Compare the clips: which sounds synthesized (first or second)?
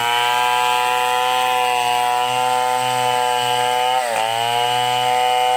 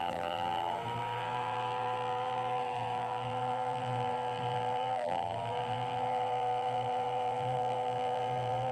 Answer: second